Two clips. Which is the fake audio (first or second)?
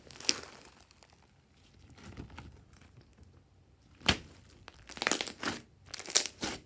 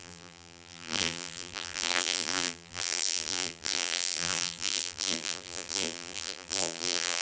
second